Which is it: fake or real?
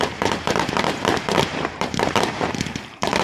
fake